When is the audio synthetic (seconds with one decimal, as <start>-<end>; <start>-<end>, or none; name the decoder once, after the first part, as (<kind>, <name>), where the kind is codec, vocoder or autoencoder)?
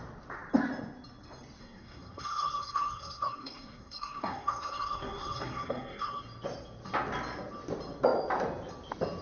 1.6-6.2 (codec, SNAC)